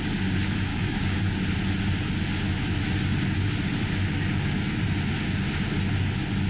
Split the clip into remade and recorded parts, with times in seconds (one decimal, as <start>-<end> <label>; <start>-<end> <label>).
0.0-0.7 recorded; 0.7-1.2 remade; 1.2-6.5 recorded